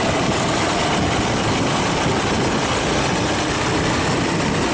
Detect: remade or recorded recorded